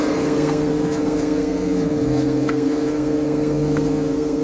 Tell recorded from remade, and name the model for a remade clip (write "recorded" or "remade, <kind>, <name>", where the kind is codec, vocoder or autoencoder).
remade, codec, SNAC